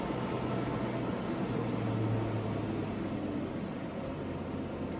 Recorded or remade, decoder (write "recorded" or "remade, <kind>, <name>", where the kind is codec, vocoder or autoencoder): recorded